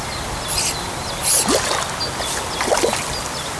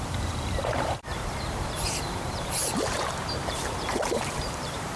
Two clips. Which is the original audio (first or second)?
first